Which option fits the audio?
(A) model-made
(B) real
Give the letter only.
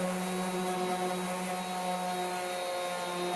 B